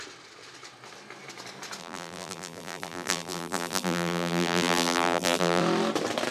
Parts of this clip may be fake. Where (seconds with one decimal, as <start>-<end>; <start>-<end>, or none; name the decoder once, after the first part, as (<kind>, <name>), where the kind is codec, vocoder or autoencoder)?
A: 1.8-5.6 (vocoder, BigVGAN v2)